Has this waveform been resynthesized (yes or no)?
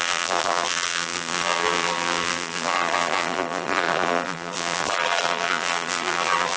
yes